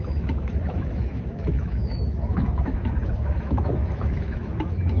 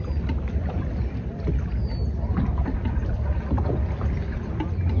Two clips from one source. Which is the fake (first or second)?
first